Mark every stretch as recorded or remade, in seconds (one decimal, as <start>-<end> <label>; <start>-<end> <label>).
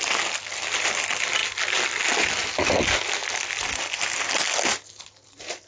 0.0-5.7 recorded